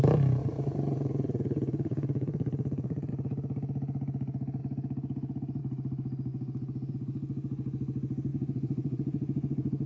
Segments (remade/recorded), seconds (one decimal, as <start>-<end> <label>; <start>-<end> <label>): 0.0-0.4 recorded; 0.4-3.1 remade; 3.1-8.3 recorded; 8.3-9.9 remade